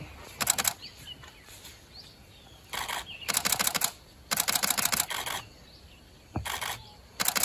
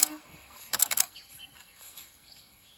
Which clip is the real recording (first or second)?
first